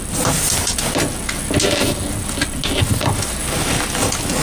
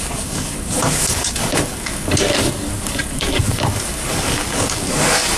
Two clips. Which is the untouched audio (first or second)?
first